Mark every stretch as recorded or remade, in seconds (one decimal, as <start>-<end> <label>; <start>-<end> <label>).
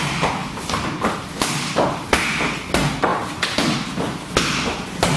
0.0-0.4 recorded; 0.4-2.1 remade; 2.1-3.1 recorded; 3.1-4.0 remade; 4.0-5.2 recorded